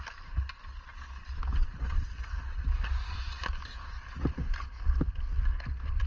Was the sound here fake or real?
real